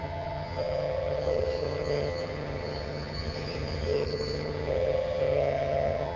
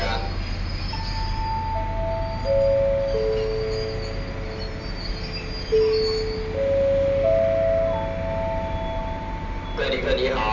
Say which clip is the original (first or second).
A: second